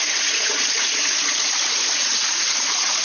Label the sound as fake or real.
fake